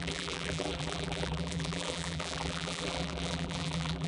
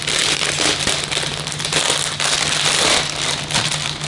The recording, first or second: second